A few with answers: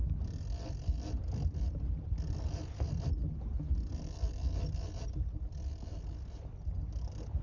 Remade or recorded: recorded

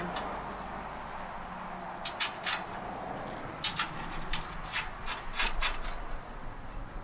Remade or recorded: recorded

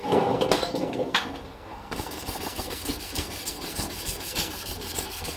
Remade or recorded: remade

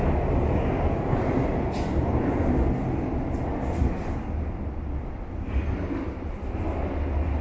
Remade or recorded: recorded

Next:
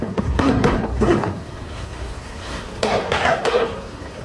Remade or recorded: remade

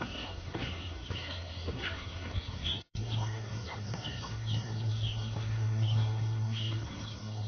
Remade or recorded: remade